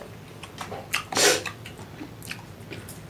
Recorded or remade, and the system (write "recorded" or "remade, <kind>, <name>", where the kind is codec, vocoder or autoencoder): recorded